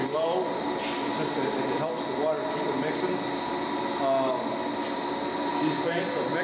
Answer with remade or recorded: recorded